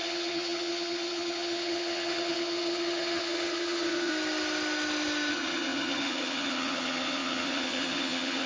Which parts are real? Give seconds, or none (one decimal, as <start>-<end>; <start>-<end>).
4.1-5.3